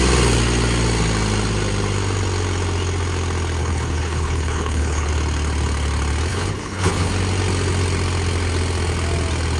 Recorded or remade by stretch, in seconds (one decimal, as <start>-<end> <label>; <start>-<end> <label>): 0.0-3.6 recorded; 3.6-5.1 remade; 5.1-6.3 recorded; 6.3-7.1 remade; 7.1-9.6 recorded